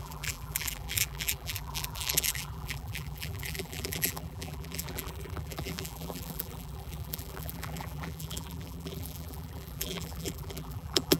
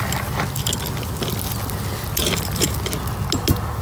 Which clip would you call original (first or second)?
second